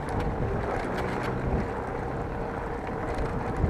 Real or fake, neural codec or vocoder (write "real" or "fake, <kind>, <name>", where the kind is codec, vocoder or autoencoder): real